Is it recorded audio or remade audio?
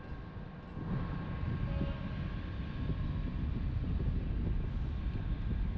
recorded